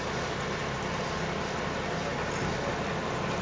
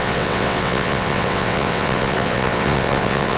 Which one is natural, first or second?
first